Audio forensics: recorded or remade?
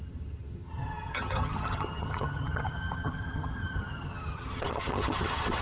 remade